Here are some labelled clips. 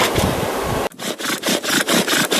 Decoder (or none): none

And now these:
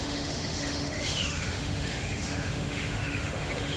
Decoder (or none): autoencoder, DAC-VAE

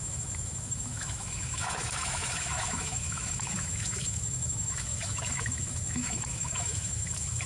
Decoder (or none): autoencoder, DAC-VAE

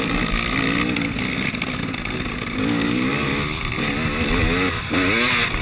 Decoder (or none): none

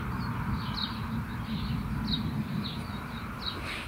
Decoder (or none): vocoder, BigVGAN v2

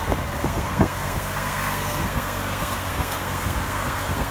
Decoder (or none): codec, SNAC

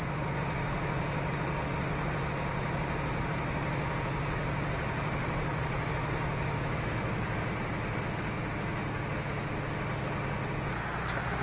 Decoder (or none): none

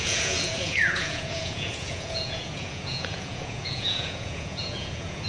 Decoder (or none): vocoder, Vocos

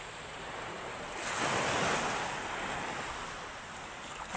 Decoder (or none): none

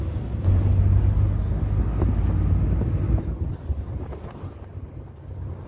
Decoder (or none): none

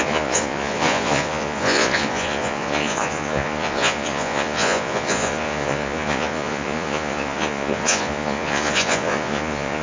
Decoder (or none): vocoder, Vocos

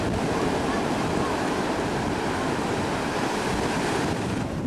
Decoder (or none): none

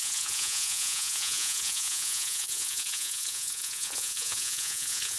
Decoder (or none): vocoder, Vocos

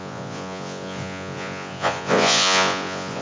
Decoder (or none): vocoder, Vocos